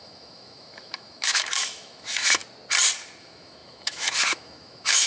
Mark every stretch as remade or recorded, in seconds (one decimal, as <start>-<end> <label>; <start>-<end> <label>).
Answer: 0.0-2.4 remade; 2.4-3.2 recorded; 3.2-5.1 remade